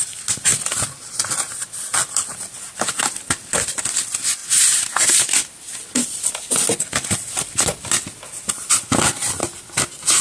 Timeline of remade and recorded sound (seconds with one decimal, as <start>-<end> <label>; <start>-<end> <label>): 0.0-10.2 recorded